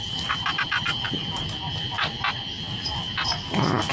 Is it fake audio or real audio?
real